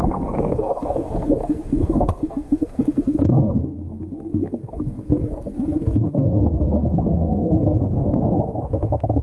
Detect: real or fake fake